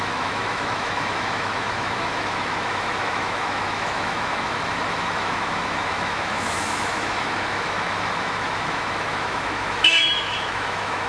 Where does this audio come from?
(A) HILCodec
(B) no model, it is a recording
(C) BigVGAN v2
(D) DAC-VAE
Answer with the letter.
D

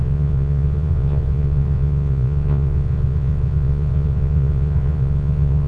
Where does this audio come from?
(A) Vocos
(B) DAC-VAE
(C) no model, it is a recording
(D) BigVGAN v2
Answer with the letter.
A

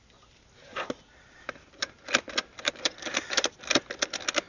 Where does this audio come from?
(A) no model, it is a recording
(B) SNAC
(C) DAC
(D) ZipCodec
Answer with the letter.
A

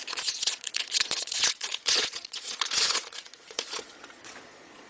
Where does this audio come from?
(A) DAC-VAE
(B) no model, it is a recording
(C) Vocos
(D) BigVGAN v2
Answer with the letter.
C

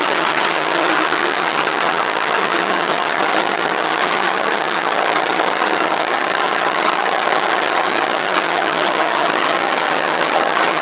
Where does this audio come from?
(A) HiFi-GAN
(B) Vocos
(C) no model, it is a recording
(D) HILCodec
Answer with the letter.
A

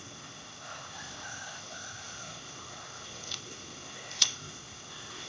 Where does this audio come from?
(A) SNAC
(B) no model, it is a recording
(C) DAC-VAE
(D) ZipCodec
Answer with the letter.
D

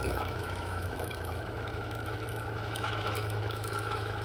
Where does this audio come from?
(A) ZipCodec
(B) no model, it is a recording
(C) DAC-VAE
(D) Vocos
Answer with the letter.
C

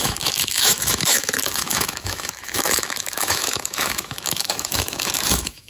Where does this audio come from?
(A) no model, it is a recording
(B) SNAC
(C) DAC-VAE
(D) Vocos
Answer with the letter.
C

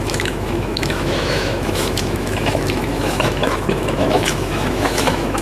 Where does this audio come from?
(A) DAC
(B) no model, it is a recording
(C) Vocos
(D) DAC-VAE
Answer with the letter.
D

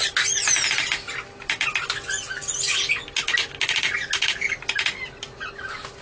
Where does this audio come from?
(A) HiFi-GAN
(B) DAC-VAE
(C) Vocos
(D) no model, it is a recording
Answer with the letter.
D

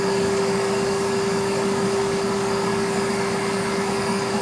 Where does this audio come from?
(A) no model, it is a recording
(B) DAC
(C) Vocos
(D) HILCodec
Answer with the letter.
B